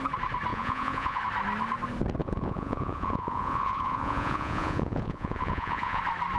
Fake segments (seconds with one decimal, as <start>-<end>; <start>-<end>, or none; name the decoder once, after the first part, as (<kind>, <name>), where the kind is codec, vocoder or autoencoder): 0.5-1.2 (vocoder, Vocos); 2.2-6.0